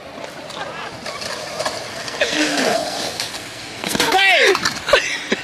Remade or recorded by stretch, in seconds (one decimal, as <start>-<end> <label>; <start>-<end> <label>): 0.0-1.9 recorded; 1.9-4.2 remade; 4.2-5.4 recorded